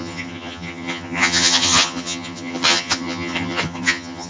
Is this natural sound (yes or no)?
no